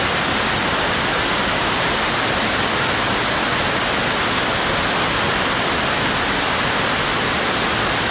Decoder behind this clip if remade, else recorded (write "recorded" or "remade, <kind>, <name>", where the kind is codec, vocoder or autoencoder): recorded